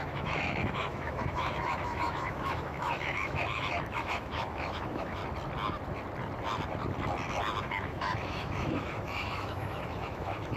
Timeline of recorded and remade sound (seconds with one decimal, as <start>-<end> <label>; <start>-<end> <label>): 0.0-5.2 remade; 5.2-7.6 recorded; 7.6-10.6 remade